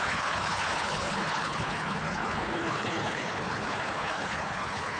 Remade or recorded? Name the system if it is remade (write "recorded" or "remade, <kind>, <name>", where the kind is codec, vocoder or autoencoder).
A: remade, codec, HILCodec